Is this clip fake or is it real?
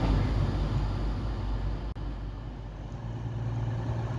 real